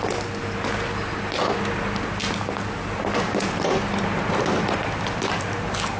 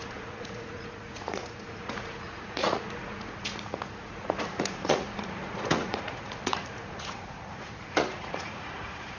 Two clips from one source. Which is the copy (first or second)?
second